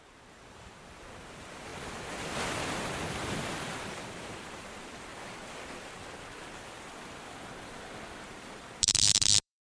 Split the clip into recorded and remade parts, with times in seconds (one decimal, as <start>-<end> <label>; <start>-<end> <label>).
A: 0.0-1.7 remade; 1.7-3.9 recorded; 3.9-5.1 remade; 5.1-8.2 recorded; 8.2-9.7 remade